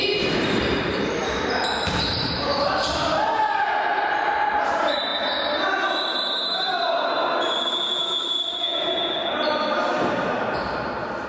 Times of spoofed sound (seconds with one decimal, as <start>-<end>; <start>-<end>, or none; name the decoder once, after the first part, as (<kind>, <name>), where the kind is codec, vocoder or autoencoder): 0.0-1.2 (vocoder, BigVGAN v2); 1.8-5.1; 8.2-8.7; 9.3-11.3